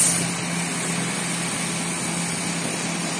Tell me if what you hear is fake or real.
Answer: real